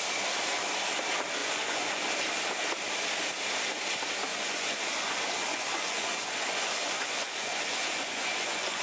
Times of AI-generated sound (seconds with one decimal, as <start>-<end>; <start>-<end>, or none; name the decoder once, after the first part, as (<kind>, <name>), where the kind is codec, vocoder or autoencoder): 1.4-2.1 (vocoder, Vocos); 4.3-8.8